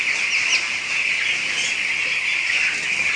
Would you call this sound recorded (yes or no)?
yes